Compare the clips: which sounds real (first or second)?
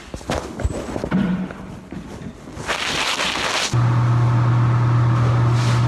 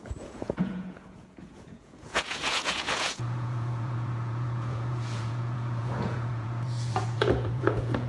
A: first